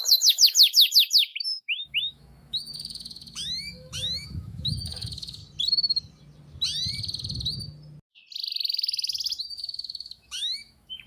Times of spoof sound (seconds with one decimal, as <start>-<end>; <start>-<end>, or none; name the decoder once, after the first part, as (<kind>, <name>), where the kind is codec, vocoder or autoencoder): 0.0-5.4 (autoencoder, DAC-VAE); 9.4-11.1